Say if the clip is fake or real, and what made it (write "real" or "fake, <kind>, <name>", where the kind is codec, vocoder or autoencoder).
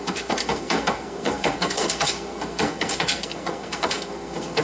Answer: fake, codec, SNAC